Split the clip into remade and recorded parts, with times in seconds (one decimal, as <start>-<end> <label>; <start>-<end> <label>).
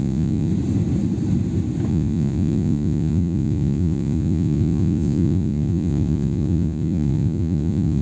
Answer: 0.0-0.5 remade; 0.5-1.9 recorded; 1.9-8.0 remade